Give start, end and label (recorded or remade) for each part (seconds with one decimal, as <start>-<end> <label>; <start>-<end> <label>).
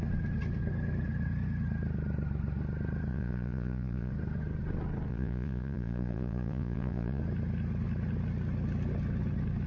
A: 0.0-3.1 recorded; 3.1-4.1 remade; 4.1-5.1 recorded; 5.1-7.2 remade; 7.2-9.7 recorded